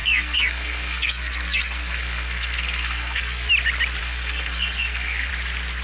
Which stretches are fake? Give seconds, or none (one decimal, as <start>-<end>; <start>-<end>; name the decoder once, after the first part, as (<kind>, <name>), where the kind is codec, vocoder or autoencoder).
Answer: 0.0-3.5 (codec, SNAC); 4.0-5.3